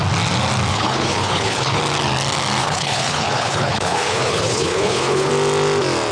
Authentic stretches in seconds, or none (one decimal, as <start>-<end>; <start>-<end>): 0.0-0.7; 1.8-2.6; 5.3-6.1